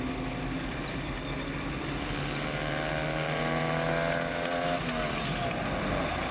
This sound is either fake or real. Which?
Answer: real